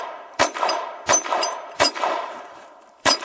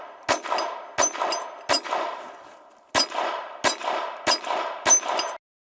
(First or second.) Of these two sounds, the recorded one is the second